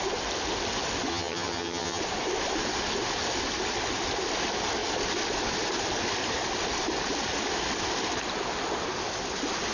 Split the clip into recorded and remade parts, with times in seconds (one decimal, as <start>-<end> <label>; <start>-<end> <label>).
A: 0.0-1.1 recorded; 1.1-2.0 remade; 2.0-9.7 recorded